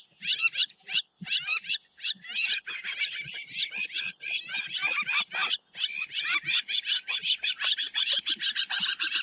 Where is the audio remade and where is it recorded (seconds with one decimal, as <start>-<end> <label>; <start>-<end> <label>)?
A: 0.0-9.2 recorded